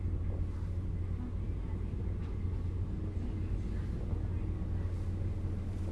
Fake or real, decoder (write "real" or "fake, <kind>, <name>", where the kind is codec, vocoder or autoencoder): real